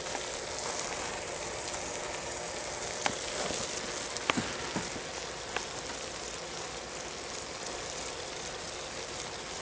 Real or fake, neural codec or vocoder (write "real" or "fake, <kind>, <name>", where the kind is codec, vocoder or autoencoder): real